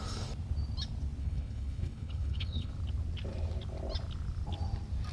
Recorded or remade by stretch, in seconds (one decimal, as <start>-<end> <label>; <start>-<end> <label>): 0.0-1.2 recorded; 1.2-2.7 remade; 2.7-5.1 recorded